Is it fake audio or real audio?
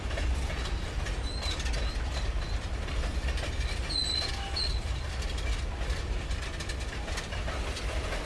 real